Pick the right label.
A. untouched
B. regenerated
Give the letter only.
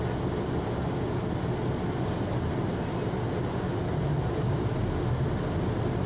A